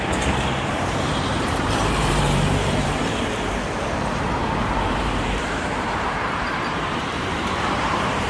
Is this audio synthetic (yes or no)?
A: yes